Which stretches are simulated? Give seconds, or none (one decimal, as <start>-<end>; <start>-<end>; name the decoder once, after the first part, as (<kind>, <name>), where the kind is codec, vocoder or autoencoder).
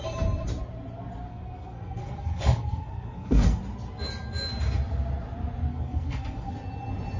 1.3-3.6 (codec, SNAC); 5.7-6.5